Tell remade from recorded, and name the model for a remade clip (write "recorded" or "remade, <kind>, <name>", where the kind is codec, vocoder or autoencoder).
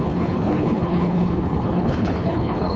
remade, codec, HILCodec